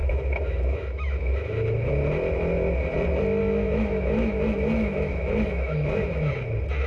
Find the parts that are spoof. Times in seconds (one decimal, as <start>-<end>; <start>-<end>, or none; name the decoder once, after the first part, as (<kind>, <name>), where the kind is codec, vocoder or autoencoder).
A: 0.0-1.9 (autoencoder, DAC-VAE); 3.4-6.3